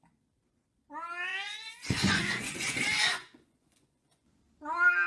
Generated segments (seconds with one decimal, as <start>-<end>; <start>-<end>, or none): 1.3-4.4